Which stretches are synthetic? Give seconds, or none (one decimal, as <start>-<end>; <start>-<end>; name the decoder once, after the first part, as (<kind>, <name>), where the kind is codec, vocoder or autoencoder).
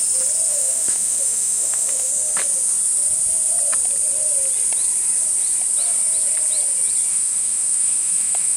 0.5-2.1 (autoencoder, DAC-VAE); 7.1-8.6